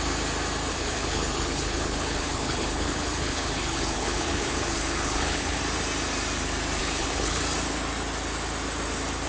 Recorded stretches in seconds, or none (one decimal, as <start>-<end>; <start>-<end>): 0.0-0.7; 5.6-6.8; 7.4-9.3